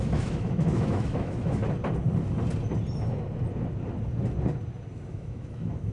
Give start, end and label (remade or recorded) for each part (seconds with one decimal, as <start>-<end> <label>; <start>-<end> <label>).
0.0-1.6 remade; 1.6-5.1 recorded; 5.1-5.9 remade